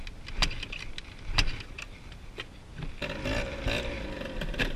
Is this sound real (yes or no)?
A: yes